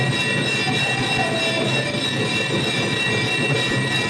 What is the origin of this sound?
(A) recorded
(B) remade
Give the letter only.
A